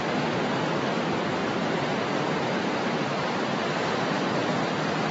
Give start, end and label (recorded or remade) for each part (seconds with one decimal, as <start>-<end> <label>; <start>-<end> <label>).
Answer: 0.0-1.4 recorded; 1.4-3.7 remade; 3.7-5.1 recorded